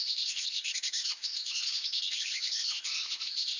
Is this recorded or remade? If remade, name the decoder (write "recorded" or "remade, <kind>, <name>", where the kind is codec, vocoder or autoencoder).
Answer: remade, codec, ZipCodec